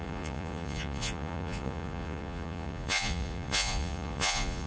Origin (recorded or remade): remade